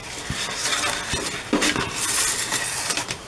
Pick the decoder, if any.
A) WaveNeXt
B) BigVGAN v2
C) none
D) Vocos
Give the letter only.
C